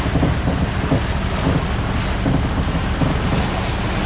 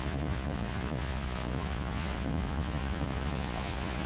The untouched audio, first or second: first